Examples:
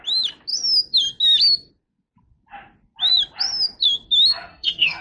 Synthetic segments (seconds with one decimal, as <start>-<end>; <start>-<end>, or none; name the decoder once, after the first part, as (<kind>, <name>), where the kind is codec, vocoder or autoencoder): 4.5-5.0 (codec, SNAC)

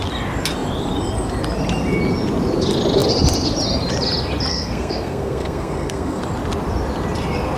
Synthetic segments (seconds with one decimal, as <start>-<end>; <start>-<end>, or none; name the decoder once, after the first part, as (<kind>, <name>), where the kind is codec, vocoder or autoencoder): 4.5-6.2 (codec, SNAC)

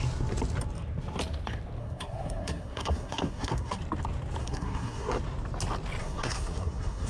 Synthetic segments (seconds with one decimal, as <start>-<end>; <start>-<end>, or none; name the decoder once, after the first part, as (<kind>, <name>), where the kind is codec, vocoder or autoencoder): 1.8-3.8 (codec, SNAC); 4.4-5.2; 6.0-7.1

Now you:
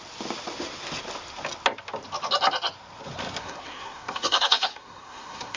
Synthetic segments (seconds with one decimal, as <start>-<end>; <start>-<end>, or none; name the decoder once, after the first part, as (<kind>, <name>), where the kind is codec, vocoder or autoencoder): 3.4-5.6 (codec, SNAC)

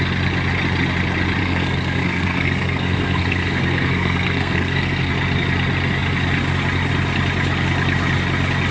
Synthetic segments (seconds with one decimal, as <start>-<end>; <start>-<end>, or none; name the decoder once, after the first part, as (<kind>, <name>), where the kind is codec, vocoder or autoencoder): 1.4-5.1 (codec, SNAC)